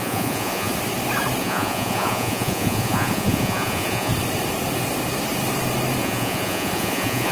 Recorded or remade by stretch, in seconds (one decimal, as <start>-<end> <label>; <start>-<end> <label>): 0.0-0.7 remade; 0.7-1.4 recorded; 1.4-4.1 remade; 4.1-6.0 recorded; 6.0-7.3 remade